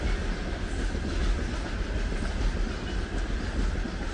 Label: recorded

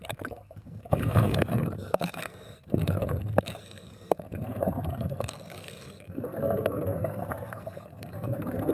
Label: remade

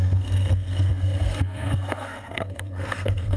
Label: remade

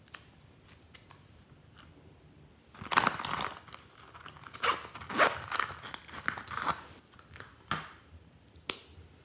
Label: recorded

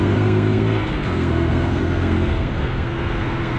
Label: remade